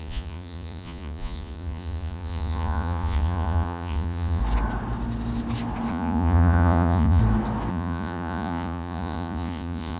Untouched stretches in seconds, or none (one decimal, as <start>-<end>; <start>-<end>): 4.4-5.9; 7.2-7.7